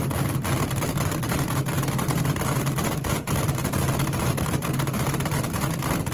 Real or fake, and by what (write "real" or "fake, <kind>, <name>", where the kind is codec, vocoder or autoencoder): real